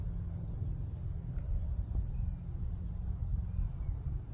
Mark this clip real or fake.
real